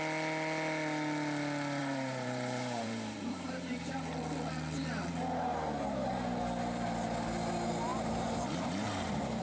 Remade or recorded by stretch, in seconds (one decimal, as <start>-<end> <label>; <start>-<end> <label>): 0.0-1.8 recorded; 1.8-4.0 remade; 4.0-7.9 recorded; 7.9-9.4 remade